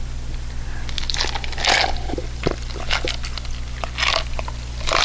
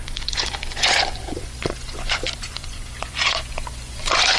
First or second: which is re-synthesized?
second